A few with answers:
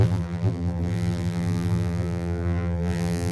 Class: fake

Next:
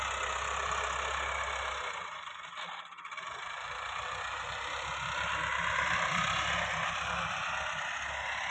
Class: real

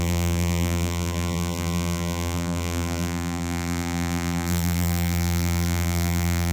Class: fake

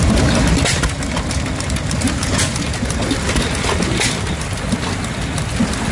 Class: real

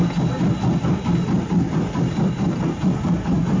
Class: fake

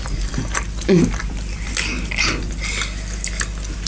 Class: real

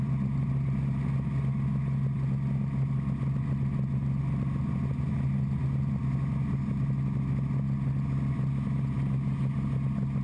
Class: real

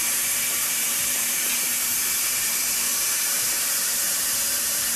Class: fake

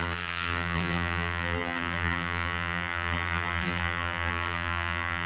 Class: fake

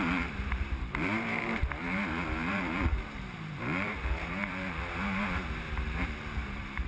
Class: fake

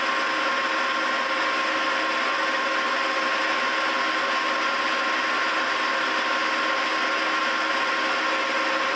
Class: real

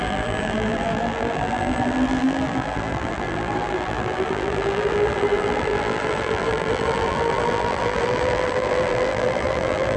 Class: fake